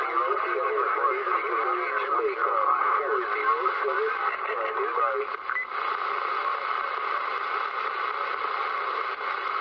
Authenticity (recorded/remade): recorded